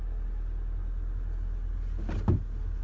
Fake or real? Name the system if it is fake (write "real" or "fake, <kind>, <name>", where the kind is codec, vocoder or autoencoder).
real